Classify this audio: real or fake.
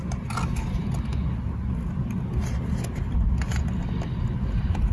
real